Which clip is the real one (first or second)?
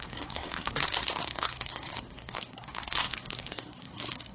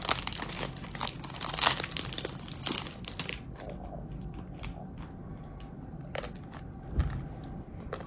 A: second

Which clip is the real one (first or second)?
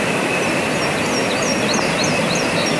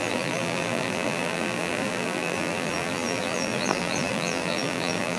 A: first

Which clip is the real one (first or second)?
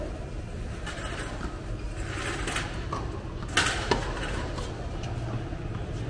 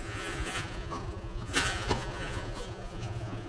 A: first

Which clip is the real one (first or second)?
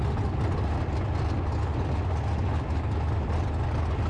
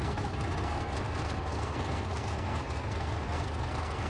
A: first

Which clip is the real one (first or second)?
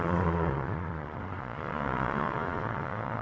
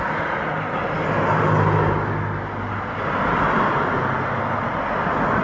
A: second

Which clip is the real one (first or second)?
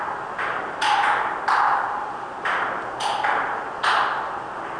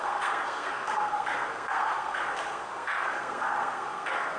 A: first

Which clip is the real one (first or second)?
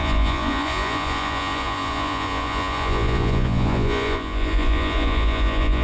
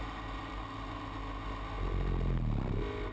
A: second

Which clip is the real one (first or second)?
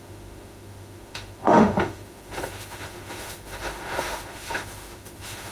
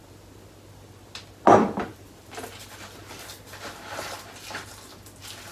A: second